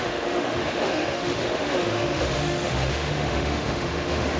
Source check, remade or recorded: remade